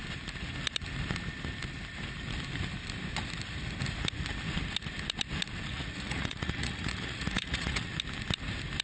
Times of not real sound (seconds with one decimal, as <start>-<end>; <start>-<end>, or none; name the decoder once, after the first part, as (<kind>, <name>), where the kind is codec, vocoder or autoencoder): 5.7-7.9 (vocoder, Vocos)